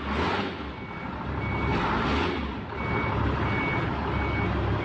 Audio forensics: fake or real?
real